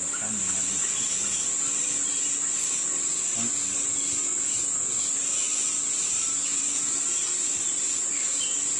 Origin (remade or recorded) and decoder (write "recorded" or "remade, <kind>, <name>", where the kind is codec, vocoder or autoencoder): recorded